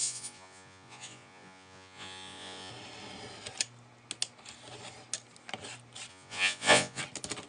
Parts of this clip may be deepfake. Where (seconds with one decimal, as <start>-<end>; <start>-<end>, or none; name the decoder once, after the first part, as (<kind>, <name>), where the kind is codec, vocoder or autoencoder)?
0.0-2.7 (vocoder, Vocos); 6.1-7.0